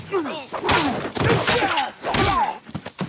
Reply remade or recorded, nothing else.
recorded